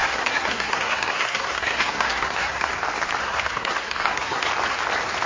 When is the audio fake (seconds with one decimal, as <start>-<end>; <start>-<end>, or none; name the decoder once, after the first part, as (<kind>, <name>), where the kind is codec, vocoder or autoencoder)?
0.0-2.7 (codec, SNAC); 3.2-4.5